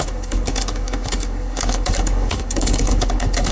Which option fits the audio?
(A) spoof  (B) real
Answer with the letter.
A